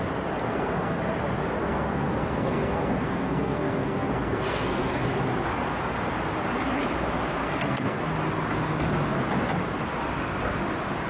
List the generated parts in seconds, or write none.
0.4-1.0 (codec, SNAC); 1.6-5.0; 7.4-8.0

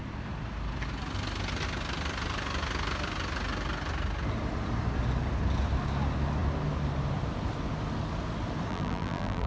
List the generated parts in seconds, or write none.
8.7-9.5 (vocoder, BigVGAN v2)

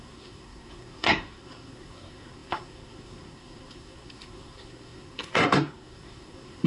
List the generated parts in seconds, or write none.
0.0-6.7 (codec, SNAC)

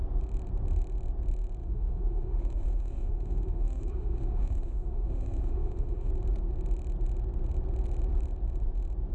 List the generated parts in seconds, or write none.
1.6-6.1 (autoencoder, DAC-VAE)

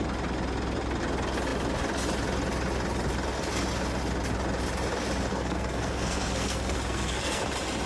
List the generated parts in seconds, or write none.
5.3-7.4 (codec, SNAC)

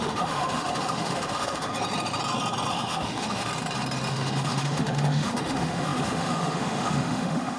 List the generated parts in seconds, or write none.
0.0-1.7 (autoencoder, DAC-VAE); 2.7-3.5; 4.1-7.6